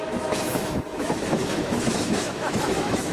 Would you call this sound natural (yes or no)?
no